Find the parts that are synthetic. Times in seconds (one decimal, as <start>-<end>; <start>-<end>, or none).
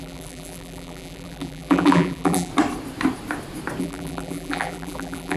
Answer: 0.0-2.5; 3.8-5.4